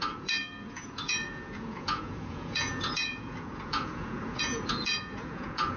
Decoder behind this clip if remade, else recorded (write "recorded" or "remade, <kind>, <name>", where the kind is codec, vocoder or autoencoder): remade, vocoder, Vocos